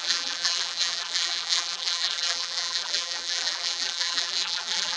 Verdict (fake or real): fake